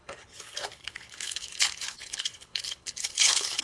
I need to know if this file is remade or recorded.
remade